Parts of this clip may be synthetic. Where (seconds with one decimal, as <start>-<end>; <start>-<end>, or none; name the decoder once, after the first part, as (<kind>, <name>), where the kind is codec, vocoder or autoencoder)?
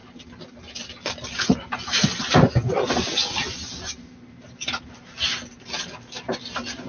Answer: none